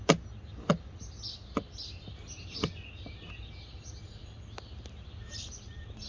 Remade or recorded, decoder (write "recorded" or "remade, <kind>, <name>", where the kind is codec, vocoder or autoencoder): recorded